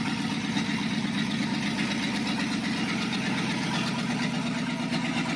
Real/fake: real